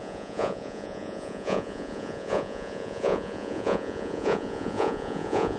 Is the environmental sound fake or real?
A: fake